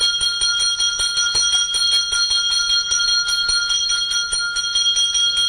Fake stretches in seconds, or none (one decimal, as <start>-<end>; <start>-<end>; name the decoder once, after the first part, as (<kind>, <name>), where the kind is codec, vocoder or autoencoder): none